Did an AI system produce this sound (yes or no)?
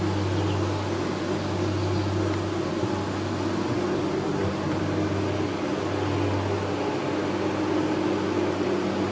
no